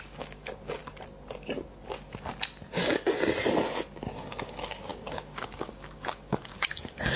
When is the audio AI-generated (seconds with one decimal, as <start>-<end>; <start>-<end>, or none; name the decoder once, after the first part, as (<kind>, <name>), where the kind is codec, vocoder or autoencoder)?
0.0-0.8 (codec, DAC); 4.2-7.2